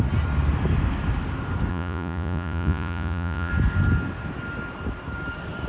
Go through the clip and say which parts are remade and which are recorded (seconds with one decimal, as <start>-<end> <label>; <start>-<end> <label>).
0.0-1.7 recorded; 1.7-3.5 remade; 3.5-5.7 recorded